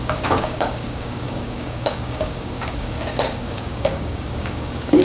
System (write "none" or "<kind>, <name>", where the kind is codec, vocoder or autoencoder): codec, DAC